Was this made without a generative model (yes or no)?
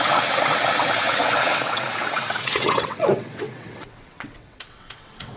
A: no